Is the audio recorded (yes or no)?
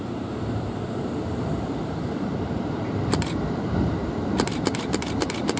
no